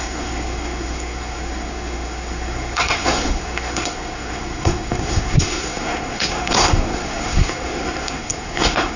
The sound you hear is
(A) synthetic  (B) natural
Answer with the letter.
A